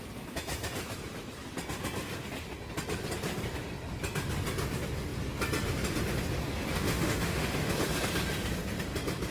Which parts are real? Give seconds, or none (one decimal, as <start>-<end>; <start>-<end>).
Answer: 0.0-6.7; 7.7-9.3